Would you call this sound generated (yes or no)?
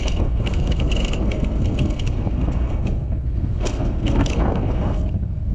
yes